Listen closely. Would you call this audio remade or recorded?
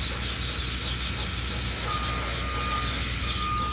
recorded